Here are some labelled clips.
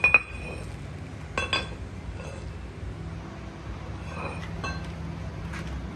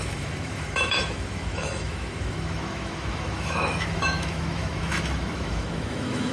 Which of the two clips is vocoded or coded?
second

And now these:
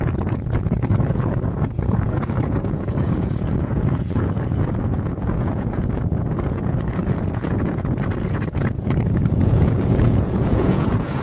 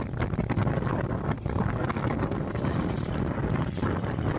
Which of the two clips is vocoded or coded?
first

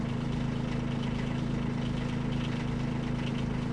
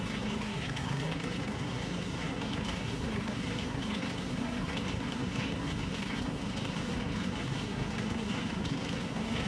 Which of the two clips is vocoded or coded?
second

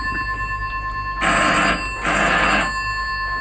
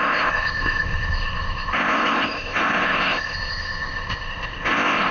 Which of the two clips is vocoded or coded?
second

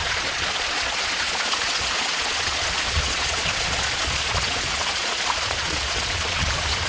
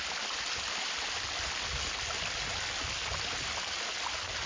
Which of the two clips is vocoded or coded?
first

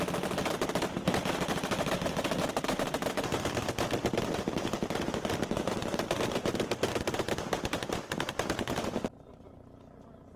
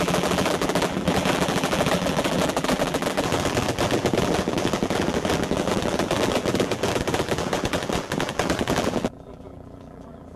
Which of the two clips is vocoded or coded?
second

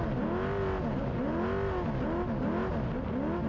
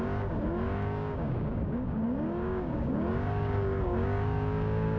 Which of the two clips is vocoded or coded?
second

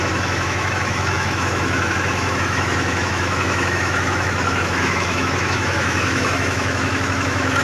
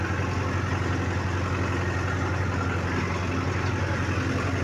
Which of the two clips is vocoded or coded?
first